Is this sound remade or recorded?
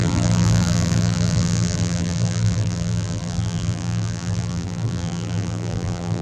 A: remade